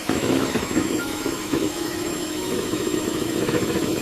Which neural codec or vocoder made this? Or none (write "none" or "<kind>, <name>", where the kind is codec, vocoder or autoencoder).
autoencoder, DAC-VAE